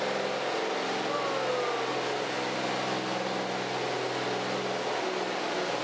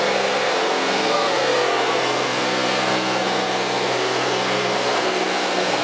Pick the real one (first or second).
first